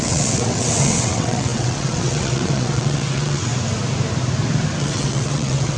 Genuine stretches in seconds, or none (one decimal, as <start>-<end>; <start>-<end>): 3.5-4.8